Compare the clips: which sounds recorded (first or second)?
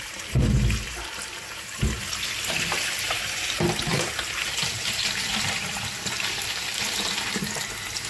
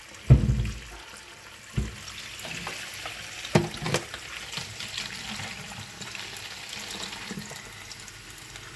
second